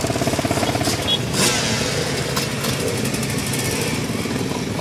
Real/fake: real